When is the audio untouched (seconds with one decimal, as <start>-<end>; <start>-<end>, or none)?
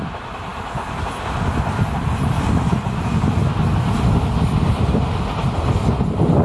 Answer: 0.0-6.4